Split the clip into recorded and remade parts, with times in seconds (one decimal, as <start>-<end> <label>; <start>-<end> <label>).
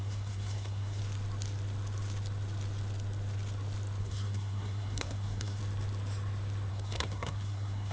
0.0-1.0 remade; 1.0-4.0 recorded; 4.0-5.6 remade; 5.6-6.7 recorded; 6.7-7.9 remade